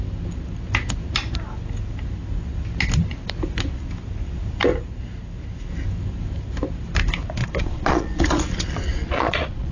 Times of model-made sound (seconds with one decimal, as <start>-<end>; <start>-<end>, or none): 7.4-9.7